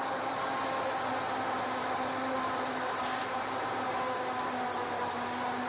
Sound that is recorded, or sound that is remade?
recorded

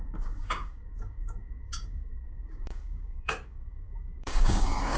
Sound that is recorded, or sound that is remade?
remade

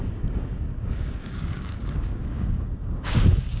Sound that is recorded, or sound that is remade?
remade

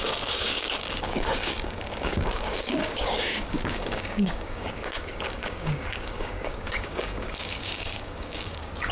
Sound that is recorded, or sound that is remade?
remade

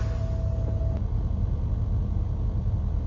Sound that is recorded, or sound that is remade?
recorded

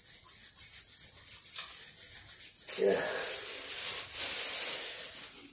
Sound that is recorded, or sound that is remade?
recorded